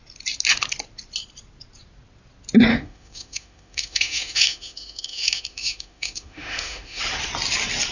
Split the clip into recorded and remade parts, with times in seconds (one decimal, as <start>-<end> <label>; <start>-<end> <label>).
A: 0.0-2.7 recorded; 2.7-7.0 remade; 7.0-7.9 recorded